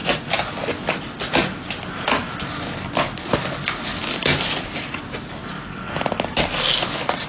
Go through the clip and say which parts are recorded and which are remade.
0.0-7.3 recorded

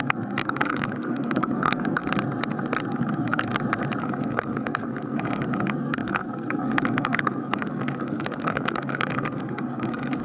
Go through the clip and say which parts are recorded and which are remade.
0.0-2.0 remade; 2.0-2.9 recorded; 2.9-3.5 remade; 3.5-4.0 recorded; 4.0-10.2 remade